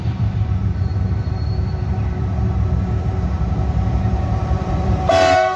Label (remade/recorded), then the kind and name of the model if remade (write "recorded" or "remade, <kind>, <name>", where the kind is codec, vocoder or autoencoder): remade, vocoder, BigVGAN v2